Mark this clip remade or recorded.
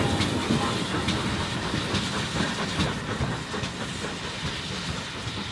recorded